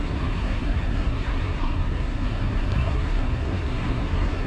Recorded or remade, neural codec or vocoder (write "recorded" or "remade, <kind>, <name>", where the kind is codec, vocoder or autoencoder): remade, codec, SNAC